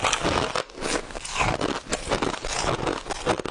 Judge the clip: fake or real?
real